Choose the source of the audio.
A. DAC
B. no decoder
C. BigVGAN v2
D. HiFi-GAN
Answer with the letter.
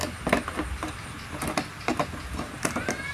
B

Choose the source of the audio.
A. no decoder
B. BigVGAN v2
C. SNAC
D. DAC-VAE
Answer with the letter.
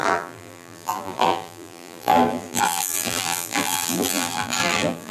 B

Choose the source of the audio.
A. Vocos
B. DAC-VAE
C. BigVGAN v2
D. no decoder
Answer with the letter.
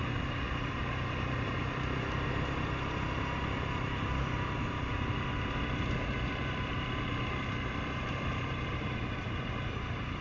C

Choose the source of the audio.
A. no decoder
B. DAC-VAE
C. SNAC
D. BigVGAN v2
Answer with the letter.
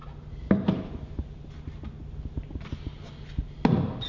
A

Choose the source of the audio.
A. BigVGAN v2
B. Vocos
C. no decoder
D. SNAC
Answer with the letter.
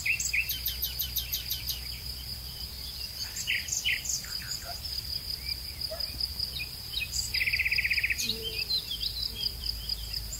A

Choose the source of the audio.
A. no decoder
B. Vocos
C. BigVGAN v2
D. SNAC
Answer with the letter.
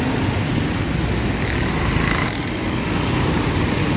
A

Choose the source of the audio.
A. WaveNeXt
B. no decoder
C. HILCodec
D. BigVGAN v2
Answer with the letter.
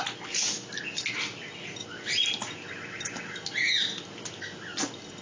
B